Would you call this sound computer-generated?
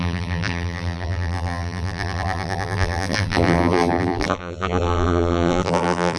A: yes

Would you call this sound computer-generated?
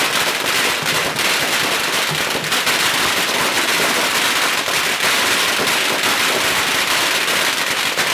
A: no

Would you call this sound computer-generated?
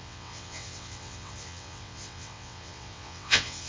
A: yes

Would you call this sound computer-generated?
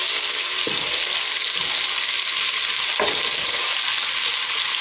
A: no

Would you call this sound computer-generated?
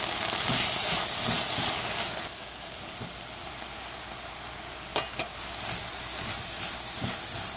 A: no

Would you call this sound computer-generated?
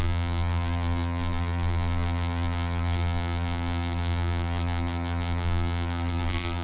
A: yes